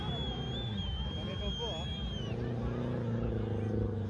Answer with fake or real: real